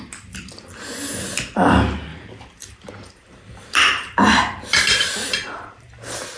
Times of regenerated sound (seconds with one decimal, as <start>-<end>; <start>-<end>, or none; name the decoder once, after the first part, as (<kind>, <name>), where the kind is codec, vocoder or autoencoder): 2.1-5.9 (vocoder, BigVGAN v2)

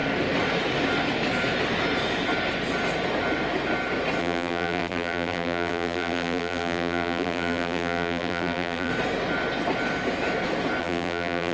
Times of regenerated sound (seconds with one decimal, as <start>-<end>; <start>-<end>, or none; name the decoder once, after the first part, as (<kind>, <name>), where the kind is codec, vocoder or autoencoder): 4.2-8.9 (vocoder, BigVGAN v2); 10.8-11.5

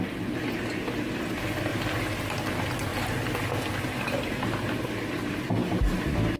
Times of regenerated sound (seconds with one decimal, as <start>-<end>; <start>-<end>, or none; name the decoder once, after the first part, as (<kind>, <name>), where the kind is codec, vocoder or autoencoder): 1.7-2.3 (vocoder, BigVGAN v2)

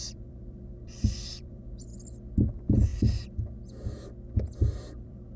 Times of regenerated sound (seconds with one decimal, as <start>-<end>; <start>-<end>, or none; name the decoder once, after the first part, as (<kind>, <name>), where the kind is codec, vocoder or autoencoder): 0.0-1.9 (vocoder, BigVGAN v2); 2.5-2.9; 5.0-5.4

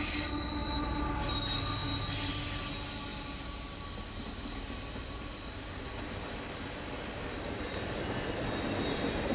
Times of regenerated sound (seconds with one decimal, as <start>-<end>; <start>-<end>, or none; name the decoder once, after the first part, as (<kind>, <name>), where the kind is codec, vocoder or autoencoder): none

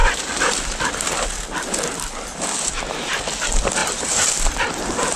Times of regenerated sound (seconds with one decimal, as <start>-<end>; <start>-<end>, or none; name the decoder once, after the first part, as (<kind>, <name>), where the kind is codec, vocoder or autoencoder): 3.8-5.2 (vocoder, BigVGAN v2)